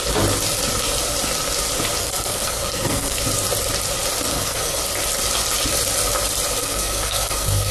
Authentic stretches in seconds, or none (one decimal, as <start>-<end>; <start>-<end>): 0.0-2.0; 3.2-4.3; 4.8-6.6